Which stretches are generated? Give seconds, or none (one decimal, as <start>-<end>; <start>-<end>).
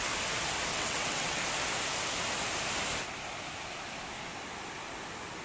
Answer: 0.7-1.4